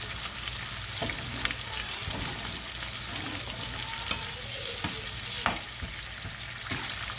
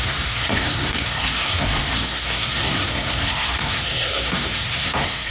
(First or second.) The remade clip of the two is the second